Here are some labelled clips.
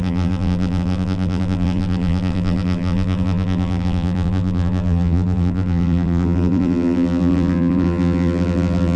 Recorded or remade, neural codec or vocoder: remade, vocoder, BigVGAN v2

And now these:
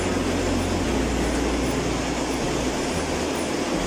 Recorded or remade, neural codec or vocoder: recorded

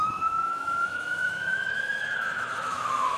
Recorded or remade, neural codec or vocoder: remade, autoencoder, DAC-VAE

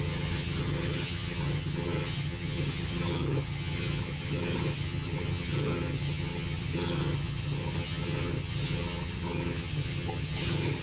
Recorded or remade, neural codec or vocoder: remade, vocoder, HiFi-GAN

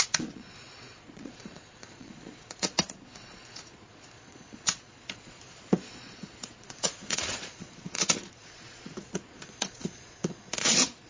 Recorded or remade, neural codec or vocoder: remade, vocoder, Vocos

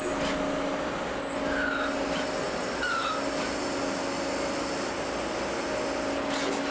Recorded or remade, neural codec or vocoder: recorded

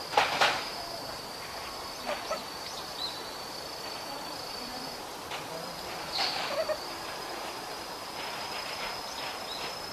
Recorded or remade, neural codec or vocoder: remade, vocoder, BigVGAN v2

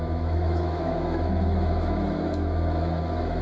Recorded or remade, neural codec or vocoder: remade, autoencoder, DAC-VAE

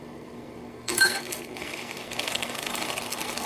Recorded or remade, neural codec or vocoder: remade, codec, SNAC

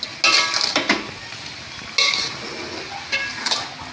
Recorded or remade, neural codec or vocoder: recorded